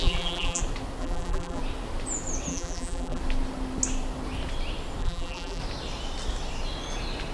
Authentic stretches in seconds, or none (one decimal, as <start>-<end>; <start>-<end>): 0.6-1.0; 1.6-2.5; 3.2-5.0; 5.6-7.3